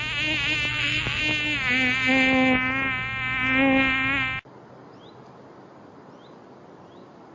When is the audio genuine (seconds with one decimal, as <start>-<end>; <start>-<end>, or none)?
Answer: 0.0-0.7; 1.2-7.3